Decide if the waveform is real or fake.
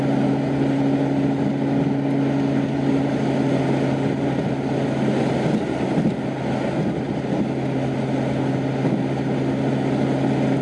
real